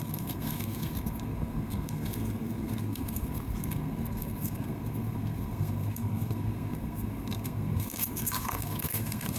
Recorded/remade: remade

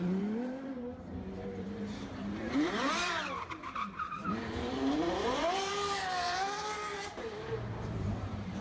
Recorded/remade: remade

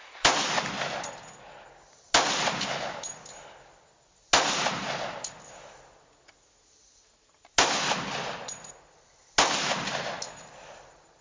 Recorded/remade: recorded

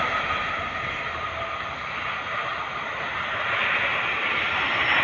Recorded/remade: recorded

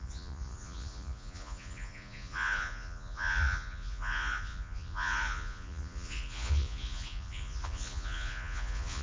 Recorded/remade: remade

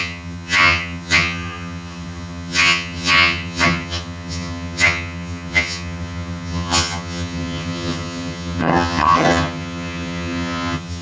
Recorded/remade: remade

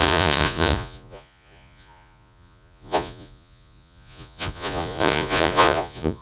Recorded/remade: remade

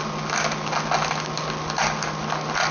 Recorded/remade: recorded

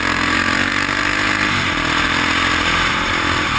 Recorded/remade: remade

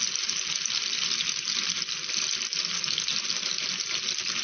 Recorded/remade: recorded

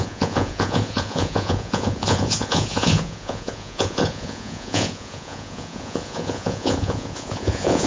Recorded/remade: remade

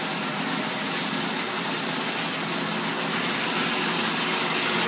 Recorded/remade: recorded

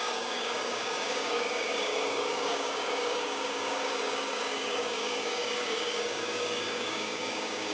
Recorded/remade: remade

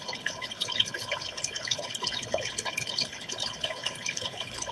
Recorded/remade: remade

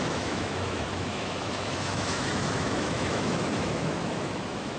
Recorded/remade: remade